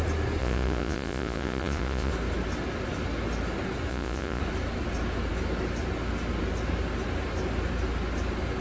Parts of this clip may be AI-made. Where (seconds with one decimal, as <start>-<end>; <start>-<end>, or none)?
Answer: 0.4-2.1; 3.9-4.4

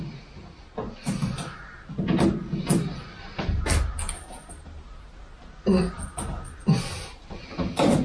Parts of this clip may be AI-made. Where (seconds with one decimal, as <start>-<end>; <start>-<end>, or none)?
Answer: none

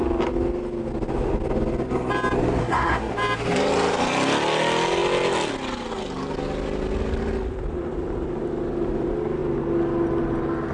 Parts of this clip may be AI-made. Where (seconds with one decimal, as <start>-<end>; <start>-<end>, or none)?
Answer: 2.6-3.1

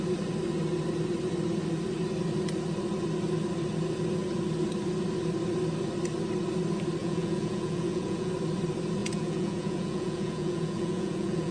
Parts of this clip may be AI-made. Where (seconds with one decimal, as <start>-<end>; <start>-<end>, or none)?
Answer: 7.0-8.3; 9.0-11.5

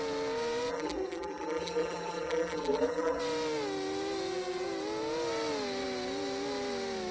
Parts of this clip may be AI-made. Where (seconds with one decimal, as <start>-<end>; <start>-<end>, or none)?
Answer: 0.7-3.2

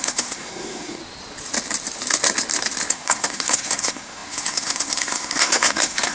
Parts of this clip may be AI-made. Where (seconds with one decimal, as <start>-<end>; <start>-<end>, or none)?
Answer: 0.0-1.0; 2.9-6.1

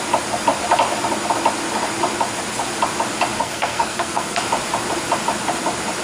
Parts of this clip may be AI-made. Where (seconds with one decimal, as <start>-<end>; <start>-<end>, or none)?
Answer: 3.4-4.4

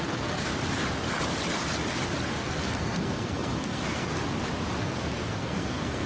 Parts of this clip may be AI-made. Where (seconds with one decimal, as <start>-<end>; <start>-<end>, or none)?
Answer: 0.0-0.5; 2.3-4.1; 4.8-6.1